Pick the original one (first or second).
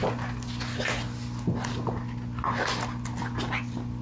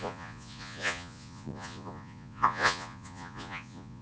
first